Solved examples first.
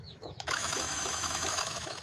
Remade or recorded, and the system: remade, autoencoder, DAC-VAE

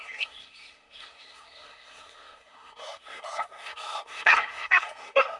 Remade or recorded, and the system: remade, codec, SNAC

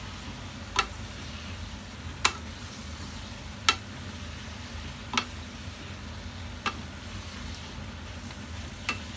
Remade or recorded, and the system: recorded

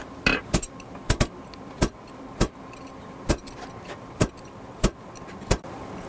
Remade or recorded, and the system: recorded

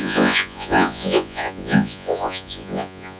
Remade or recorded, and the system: remade, vocoder, Vocos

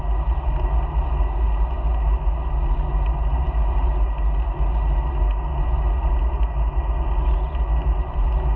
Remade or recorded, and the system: recorded